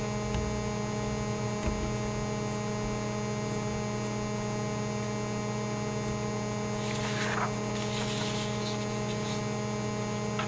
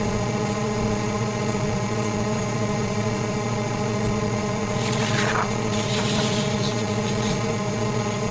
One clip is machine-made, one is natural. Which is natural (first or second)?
first